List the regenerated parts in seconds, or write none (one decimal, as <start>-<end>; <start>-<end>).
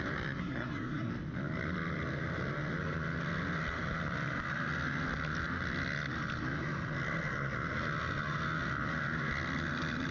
0.4-1.1